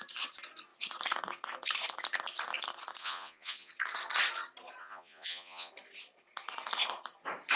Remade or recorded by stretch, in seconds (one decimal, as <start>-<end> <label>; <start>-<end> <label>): 0.0-3.0 recorded; 3.0-3.7 remade; 3.7-4.8 recorded; 4.8-5.7 remade; 5.7-7.6 recorded